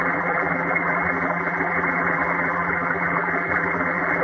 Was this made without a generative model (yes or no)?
no